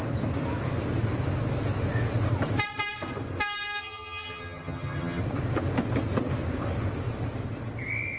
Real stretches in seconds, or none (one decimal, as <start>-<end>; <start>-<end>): 0.0-3.8; 5.2-8.2